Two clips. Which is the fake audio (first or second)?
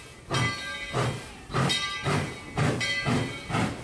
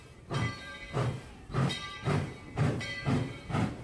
second